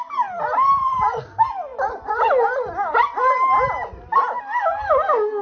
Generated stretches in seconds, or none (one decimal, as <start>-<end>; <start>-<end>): none